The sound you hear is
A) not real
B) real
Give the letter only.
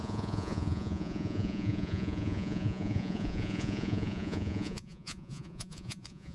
A